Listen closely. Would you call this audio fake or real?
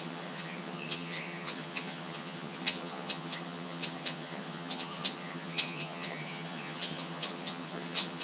fake